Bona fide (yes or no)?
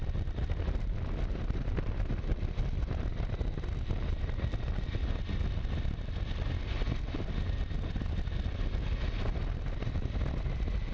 yes